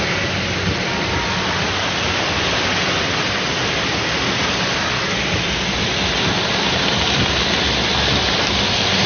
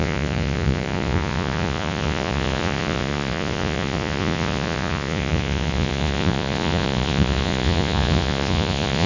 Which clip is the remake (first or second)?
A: second